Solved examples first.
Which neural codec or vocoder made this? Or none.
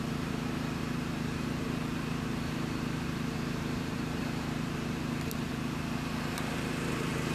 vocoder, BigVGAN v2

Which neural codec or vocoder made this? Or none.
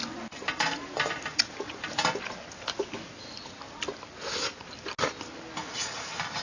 none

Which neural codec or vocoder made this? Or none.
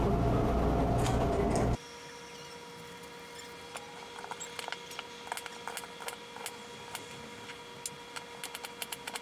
none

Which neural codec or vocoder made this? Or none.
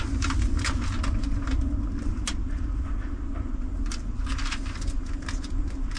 none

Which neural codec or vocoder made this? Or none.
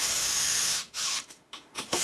autoencoder, DAC-VAE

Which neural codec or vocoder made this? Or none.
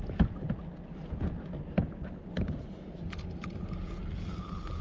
none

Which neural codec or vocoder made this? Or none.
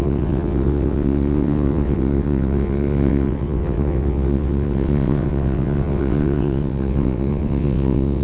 vocoder, WaveNeXt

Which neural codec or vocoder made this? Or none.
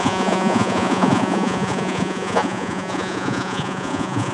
vocoder, Vocos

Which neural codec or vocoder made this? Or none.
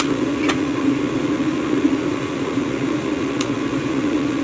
vocoder, Vocos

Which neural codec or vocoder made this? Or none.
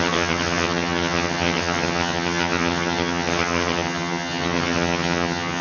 vocoder, HiFi-GAN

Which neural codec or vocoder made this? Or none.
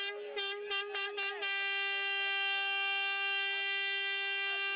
none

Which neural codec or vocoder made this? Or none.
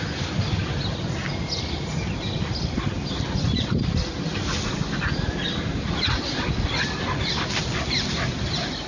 none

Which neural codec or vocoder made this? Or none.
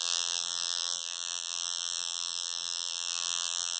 vocoder, BigVGAN v2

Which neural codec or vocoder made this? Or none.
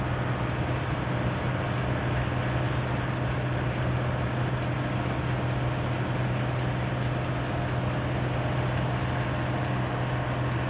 none